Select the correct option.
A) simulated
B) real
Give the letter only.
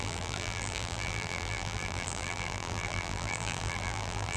A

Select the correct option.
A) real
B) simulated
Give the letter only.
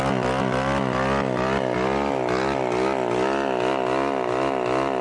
A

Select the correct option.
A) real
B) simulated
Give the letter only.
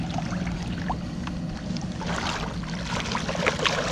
A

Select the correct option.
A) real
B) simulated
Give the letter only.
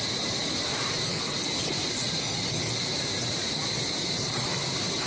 A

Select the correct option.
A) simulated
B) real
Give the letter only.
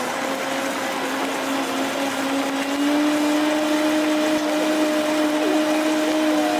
B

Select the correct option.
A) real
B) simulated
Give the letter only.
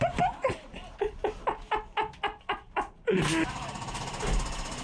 A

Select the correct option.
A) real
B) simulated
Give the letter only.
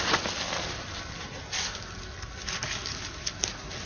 A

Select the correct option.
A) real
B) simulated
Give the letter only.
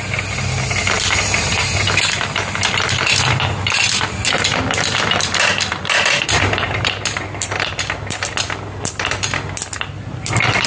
B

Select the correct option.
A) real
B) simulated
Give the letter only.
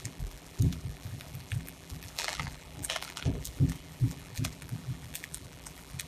B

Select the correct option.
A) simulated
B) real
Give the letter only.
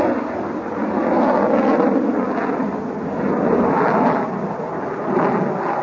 B